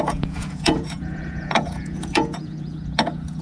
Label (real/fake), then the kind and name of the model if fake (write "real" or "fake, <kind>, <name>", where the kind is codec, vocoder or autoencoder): fake, vocoder, Vocos